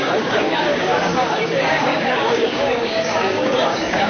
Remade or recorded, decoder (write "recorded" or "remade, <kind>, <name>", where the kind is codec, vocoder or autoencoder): remade, codec, DAC